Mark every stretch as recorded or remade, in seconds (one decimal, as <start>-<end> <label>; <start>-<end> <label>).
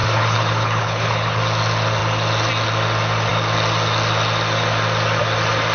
0.0-1.4 remade; 1.4-5.7 recorded